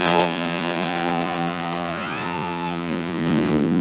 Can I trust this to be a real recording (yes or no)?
no